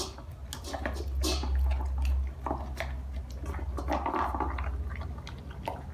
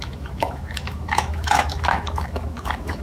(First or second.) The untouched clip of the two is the first